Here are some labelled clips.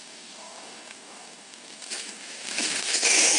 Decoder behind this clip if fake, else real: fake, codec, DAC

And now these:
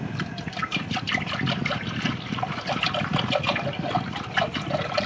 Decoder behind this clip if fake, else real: real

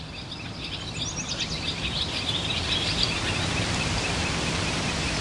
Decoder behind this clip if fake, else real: real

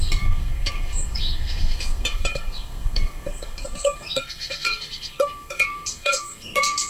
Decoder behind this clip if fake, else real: fake, codec, SNAC